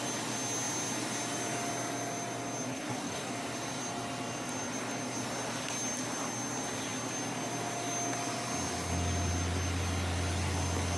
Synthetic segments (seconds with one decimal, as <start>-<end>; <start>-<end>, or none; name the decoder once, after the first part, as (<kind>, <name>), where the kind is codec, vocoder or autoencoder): 2.7-3.3 (codec, SNAC)